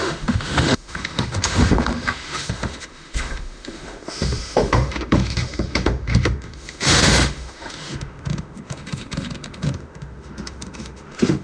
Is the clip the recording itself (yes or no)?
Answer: no